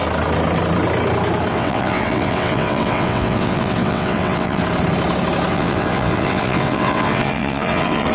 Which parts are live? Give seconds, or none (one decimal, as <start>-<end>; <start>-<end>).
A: 0.0-1.5; 4.6-5.5